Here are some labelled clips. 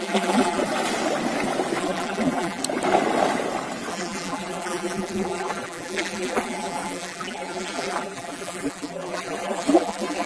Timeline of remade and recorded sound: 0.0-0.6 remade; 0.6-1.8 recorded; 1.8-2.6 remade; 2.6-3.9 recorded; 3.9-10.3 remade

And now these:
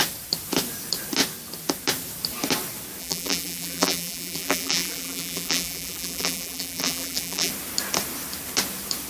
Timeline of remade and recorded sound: 0.0-3.0 recorded; 3.0-7.5 remade; 7.5-9.1 recorded

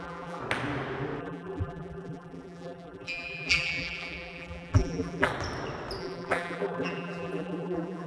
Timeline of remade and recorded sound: 0.0-0.4 remade; 0.4-1.2 recorded; 1.2-5.3 remade; 5.3-6.0 recorded; 6.0-8.1 remade